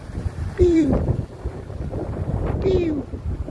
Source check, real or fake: fake